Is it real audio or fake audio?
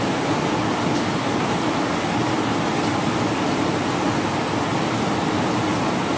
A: real